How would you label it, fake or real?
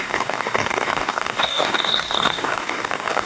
fake